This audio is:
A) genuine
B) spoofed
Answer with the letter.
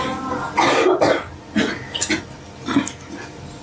A